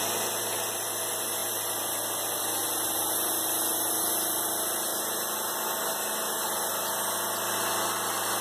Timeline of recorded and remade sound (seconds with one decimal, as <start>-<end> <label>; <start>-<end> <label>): 0.0-4.9 recorded; 4.9-5.6 remade; 5.6-8.4 recorded